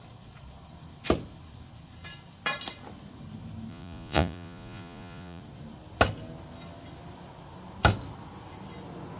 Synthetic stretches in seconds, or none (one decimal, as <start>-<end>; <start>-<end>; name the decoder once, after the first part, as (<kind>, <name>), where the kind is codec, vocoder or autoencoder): 3.7-5.4 (vocoder, Vocos)